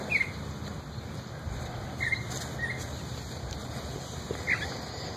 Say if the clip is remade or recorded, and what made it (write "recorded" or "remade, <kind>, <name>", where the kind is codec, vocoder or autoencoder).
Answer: recorded